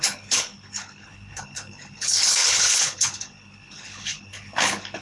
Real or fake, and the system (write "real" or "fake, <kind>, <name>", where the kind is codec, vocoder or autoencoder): fake, codec, HILCodec